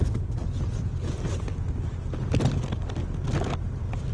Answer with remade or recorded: recorded